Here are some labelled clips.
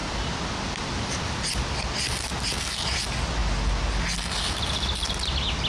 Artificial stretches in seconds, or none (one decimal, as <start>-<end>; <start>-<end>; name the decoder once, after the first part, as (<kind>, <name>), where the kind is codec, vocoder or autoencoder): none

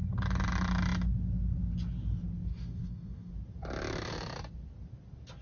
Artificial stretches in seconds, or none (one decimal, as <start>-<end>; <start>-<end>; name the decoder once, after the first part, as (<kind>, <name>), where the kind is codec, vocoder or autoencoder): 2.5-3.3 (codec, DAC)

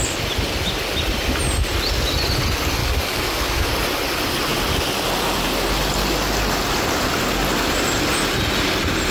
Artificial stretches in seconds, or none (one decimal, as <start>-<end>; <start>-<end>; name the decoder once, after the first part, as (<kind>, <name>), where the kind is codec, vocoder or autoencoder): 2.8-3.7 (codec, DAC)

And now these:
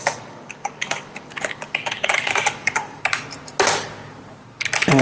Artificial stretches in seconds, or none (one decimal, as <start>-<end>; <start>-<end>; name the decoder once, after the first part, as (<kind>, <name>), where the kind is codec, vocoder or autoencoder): 0.0-3.0 (codec, DAC)

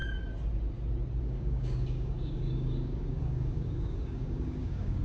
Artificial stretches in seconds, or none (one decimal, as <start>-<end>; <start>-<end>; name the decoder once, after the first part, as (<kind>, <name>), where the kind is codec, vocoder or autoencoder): 1.2-5.0 (codec, DAC)

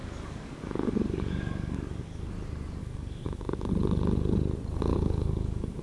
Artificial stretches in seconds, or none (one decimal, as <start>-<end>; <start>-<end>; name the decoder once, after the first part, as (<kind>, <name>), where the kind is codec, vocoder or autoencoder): 0.0-2.3 (codec, DAC); 2.8-3.7; 4.9-5.8

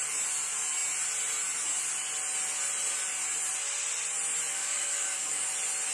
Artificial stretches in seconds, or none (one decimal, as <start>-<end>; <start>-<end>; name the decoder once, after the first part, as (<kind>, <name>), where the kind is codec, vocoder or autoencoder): 4.5-5.5 (codec, DAC)

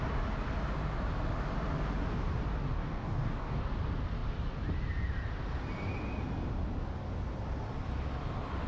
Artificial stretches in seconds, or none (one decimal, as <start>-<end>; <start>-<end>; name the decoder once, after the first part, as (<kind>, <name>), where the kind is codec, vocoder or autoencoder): 2.8-3.6 (codec, DAC)